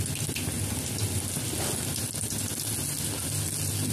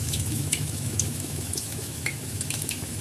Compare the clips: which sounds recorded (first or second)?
first